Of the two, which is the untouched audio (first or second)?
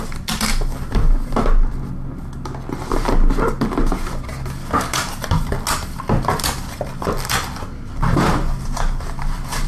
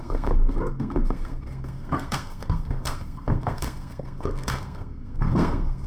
first